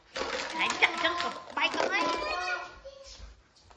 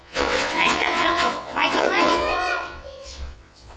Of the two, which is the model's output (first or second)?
second